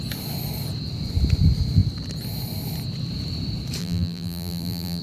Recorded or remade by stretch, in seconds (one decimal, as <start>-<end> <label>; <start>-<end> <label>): 0.0-3.8 recorded; 3.8-5.0 remade